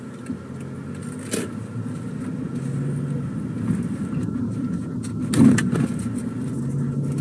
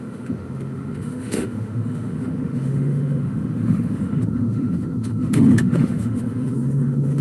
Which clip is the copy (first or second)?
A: second